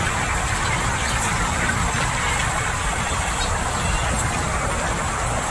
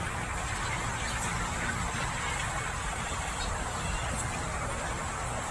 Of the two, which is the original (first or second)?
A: second